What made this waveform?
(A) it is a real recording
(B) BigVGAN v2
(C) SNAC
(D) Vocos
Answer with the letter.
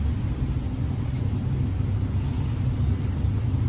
A